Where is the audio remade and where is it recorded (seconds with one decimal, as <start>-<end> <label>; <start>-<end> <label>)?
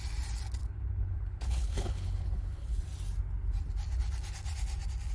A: 0.0-0.6 recorded; 0.6-2.8 remade; 2.8-5.1 recorded